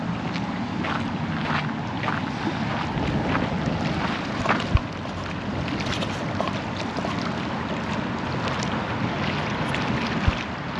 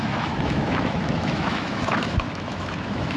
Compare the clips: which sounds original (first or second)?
first